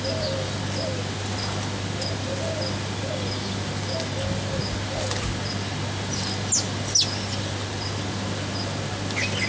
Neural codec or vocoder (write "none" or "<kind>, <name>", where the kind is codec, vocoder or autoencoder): none